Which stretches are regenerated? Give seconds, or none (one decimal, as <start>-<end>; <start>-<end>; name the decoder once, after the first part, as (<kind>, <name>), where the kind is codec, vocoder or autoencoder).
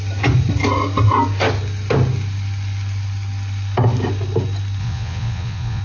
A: 4.8-5.8 (vocoder, Vocos)